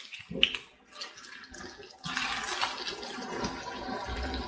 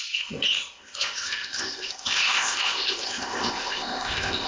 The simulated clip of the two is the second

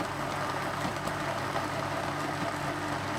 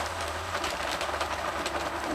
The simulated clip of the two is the second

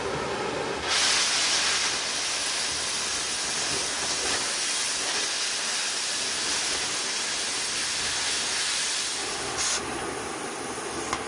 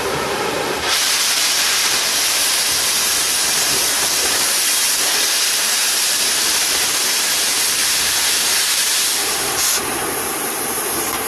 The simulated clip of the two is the second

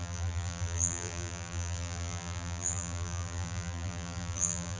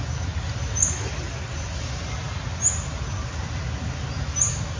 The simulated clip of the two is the first